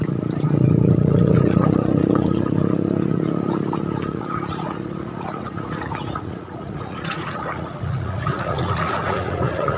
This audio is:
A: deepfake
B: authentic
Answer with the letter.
A